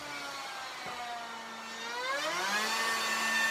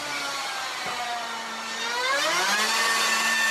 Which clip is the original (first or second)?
first